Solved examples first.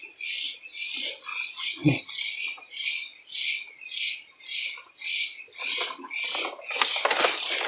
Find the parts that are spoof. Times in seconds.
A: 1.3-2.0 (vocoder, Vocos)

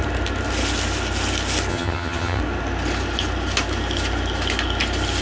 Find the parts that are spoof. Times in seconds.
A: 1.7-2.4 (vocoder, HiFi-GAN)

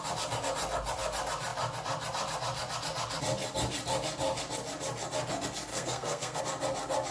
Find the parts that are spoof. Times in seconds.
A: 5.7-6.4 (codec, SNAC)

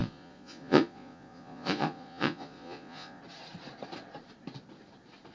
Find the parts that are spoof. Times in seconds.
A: 0.0-3.2 (vocoder, Vocos)

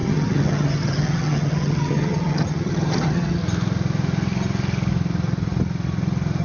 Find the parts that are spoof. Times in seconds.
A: 0.0-3.4 (vocoder, HiFi-GAN)